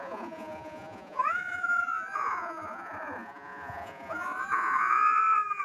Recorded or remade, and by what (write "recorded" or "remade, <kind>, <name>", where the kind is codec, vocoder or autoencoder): remade, vocoder, Vocos